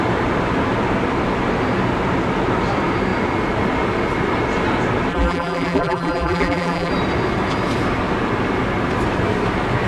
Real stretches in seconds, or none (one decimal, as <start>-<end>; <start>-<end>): 0.0-5.1; 6.9-9.9